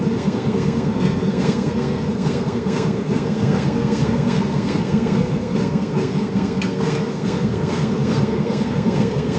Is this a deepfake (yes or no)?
yes